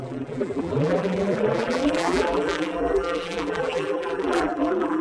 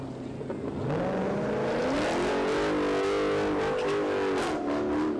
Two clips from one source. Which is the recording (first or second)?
second